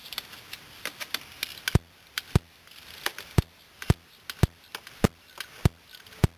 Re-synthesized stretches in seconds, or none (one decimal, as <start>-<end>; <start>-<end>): none